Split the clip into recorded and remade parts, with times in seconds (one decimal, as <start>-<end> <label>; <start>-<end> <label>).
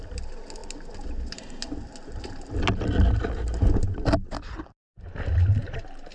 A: 0.0-6.1 recorded